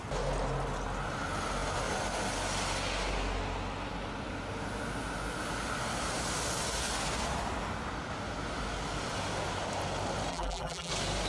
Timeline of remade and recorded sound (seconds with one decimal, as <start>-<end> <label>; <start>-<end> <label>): 0.0-10.3 recorded; 10.3-10.9 remade; 10.9-11.3 recorded